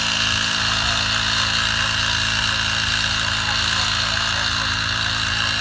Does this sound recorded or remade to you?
recorded